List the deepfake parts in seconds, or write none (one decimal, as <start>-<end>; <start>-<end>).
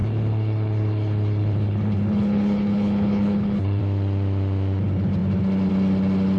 0.0-3.8